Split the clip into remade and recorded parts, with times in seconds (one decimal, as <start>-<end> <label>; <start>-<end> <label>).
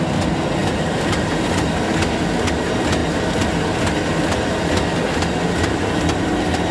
0.0-0.6 recorded; 0.6-1.7 remade; 1.7-6.7 recorded